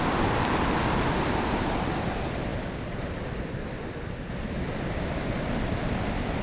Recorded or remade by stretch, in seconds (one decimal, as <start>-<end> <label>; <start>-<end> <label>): 0.0-6.4 recorded